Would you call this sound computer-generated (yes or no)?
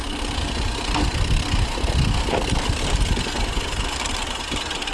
no